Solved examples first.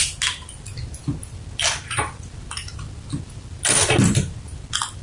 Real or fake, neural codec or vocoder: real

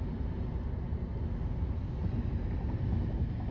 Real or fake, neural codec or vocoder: real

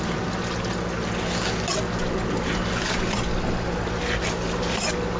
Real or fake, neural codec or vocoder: real